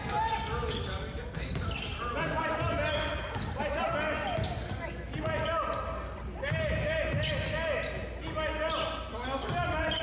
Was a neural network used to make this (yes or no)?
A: no